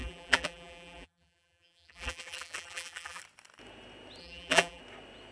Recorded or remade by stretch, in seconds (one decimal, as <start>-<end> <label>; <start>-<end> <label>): 0.0-3.2 remade; 3.2-4.2 recorded; 4.2-4.8 remade; 4.8-5.3 recorded